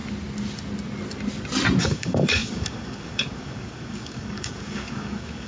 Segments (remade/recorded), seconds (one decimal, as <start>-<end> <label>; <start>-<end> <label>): 0.0-1.8 recorded; 1.8-5.5 remade